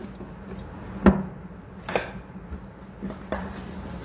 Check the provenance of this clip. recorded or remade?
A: recorded